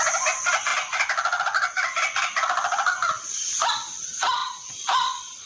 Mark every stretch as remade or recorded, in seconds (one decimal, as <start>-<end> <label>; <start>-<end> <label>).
0.0-4.4 recorded; 4.4-5.5 remade